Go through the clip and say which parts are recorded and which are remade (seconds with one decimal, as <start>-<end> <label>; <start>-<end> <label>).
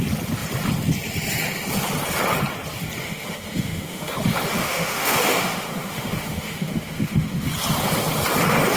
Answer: 0.0-3.0 recorded; 3.0-4.1 remade; 4.1-4.6 recorded; 4.6-7.5 remade; 7.5-8.8 recorded